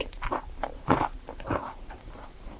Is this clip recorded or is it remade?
remade